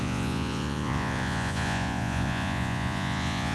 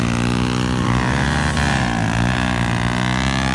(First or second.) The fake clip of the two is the first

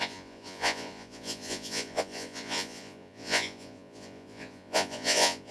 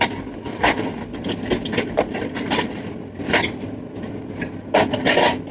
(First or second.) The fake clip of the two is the first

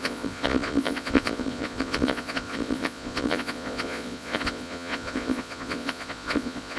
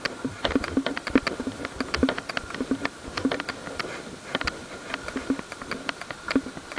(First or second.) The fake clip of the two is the first